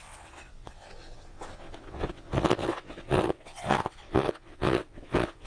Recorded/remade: remade